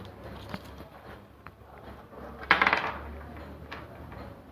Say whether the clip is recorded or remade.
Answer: remade